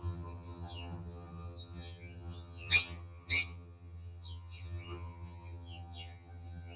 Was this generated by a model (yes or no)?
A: yes